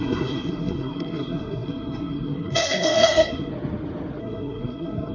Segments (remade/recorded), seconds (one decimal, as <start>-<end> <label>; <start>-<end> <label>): 0.0-3.5 remade; 3.5-4.2 recorded; 4.2-5.1 remade